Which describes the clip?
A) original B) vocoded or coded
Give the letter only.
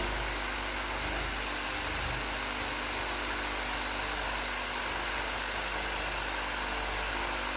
A